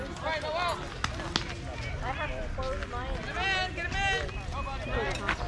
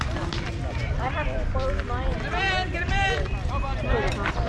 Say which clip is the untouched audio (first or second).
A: first